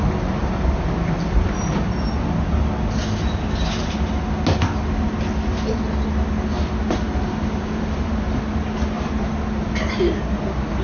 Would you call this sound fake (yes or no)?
no